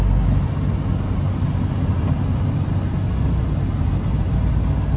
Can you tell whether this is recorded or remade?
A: recorded